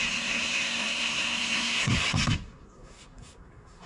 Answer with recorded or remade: remade